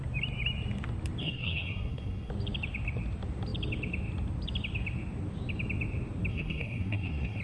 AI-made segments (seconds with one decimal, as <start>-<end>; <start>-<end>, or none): 1.2-2.3; 6.3-7.4

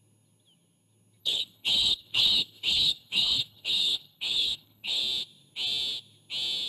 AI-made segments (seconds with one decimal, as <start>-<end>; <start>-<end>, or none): 1.2-5.0

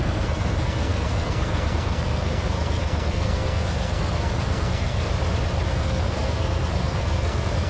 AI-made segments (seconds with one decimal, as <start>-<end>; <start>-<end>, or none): 0.0-5.1; 5.7-7.7

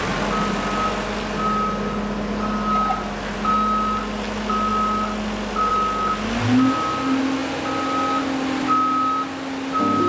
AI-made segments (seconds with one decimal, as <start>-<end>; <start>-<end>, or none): none